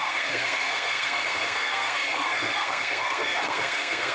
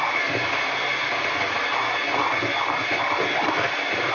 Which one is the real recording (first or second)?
second